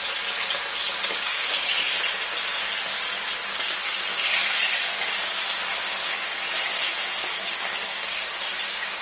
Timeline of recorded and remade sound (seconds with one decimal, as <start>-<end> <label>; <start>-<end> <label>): 0.0-1.0 recorded; 1.0-1.6 remade; 1.6-4.1 recorded; 4.1-6.4 remade; 6.4-7.2 recorded; 7.2-8.3 remade; 8.3-9.0 recorded